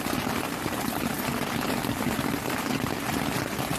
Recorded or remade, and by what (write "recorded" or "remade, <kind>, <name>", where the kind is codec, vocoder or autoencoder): recorded